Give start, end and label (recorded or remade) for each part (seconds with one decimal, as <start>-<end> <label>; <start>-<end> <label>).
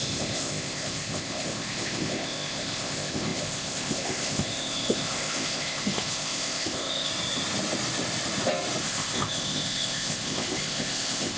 0.0-7.1 remade; 7.1-8.8 recorded; 8.8-11.4 remade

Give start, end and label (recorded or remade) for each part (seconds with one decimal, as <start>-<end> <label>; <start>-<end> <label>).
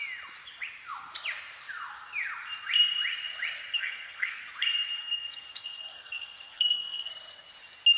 0.0-3.7 recorded; 3.7-4.4 remade; 4.4-5.0 recorded; 5.0-7.1 remade; 7.1-8.0 recorded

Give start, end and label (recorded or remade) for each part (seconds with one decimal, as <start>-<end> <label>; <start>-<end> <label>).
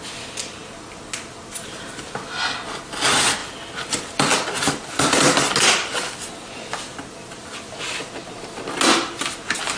0.0-9.8 recorded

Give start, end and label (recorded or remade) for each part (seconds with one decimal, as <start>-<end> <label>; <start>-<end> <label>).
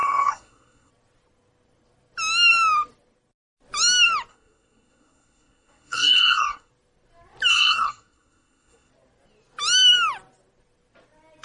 0.0-0.9 remade; 0.9-4.3 recorded; 4.3-6.7 remade; 6.7-7.5 recorded; 7.5-8.9 remade; 8.9-11.4 recorded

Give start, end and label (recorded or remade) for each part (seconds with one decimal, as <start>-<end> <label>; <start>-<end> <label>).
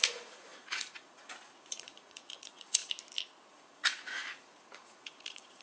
0.0-2.8 remade; 2.8-3.5 recorded; 3.5-5.6 remade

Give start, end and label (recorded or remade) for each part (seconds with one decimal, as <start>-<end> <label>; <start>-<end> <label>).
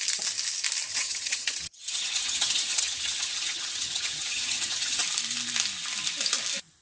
0.0-0.9 recorded; 0.9-5.0 remade; 5.0-6.8 recorded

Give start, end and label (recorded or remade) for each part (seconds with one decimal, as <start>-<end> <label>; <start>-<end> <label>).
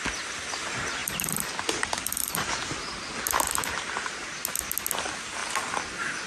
0.0-1.0 recorded; 1.0-3.0 remade; 3.0-3.6 recorded; 3.6-4.2 remade; 4.2-6.3 recorded